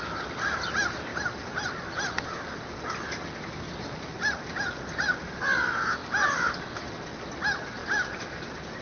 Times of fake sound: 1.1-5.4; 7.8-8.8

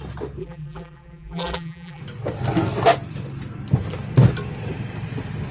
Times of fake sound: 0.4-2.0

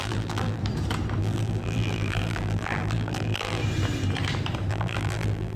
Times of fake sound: 0.0-0.6; 1.2-3.6; 4.7-5.6